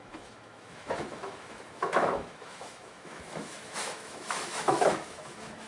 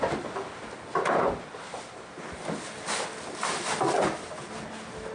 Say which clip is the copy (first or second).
first